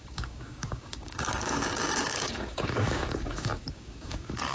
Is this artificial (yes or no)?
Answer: yes